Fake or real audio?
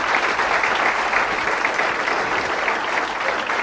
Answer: real